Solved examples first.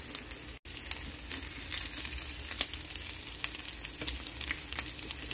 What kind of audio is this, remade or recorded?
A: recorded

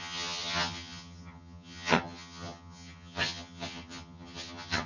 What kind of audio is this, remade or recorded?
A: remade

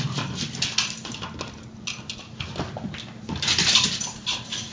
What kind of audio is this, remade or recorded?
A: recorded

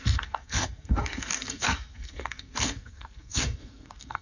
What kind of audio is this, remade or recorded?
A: remade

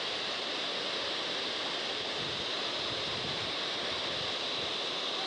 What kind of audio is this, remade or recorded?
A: recorded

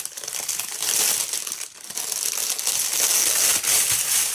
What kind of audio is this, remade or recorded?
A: recorded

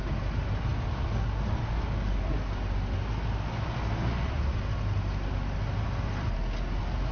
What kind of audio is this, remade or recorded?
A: recorded